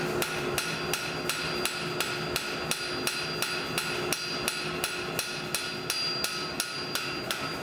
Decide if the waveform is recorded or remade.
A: recorded